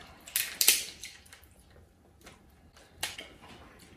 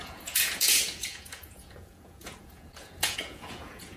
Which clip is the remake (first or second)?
second